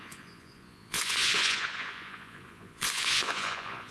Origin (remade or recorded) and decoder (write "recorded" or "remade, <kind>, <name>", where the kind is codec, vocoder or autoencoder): remade, vocoder, Vocos